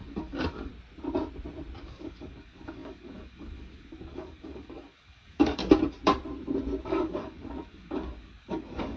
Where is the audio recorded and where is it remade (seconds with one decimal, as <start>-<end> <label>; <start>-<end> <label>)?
0.0-0.7 remade; 0.7-1.8 recorded; 1.8-5.6 remade; 5.6-6.8 recorded; 6.8-9.0 remade